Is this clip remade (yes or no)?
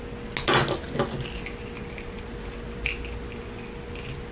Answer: no